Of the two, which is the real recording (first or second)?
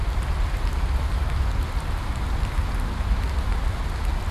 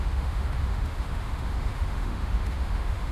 first